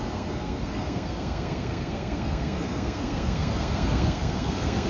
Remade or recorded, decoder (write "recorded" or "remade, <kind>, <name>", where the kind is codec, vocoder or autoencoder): remade, codec, SNAC